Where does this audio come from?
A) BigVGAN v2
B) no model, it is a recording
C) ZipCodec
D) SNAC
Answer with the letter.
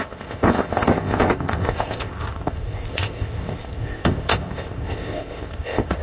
C